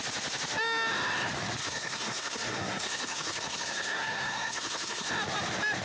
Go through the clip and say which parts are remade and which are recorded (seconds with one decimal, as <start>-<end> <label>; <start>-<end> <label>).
0.0-1.6 recorded; 1.6-5.1 remade; 5.1-5.8 recorded